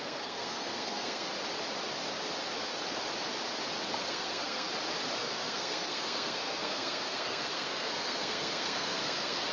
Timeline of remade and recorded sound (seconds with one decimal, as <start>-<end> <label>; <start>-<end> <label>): 0.0-1.3 remade; 1.3-4.0 recorded; 4.0-4.7 remade; 4.7-5.2 recorded; 5.2-9.5 remade